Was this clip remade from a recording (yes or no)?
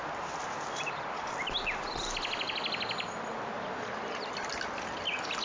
no